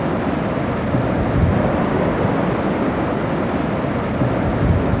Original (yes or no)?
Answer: yes